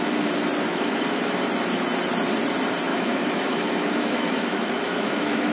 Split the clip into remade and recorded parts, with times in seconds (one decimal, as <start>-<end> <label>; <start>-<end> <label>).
0.0-0.7 recorded; 0.7-1.4 remade; 1.4-2.9 recorded; 2.9-5.5 remade